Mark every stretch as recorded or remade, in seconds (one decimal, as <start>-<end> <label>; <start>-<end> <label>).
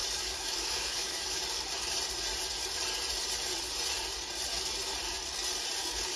0.0-1.4 remade; 1.4-6.2 recorded